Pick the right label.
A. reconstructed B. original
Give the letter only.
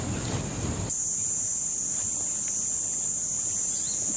A